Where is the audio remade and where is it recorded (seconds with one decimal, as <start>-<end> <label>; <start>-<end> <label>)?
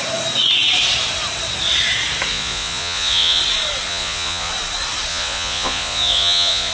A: 0.0-2.3 recorded; 2.3-3.4 remade; 3.4-3.9 recorded; 3.9-4.5 remade; 4.5-5.1 recorded; 5.1-6.7 remade